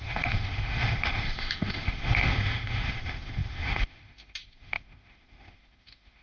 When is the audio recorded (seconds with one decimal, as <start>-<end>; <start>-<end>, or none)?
none